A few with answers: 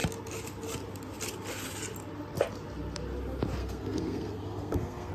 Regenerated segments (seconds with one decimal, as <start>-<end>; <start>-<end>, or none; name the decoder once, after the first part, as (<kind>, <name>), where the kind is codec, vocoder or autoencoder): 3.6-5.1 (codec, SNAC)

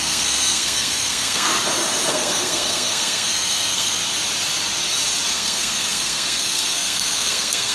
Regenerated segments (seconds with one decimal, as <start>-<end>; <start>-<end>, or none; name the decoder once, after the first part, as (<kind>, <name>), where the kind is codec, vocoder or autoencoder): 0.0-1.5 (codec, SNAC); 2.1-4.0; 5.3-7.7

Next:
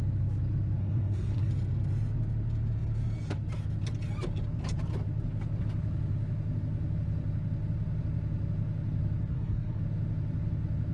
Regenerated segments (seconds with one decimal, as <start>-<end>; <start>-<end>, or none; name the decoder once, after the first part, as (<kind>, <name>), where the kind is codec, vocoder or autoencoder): 0.8-1.5 (codec, SNAC); 9.3-9.8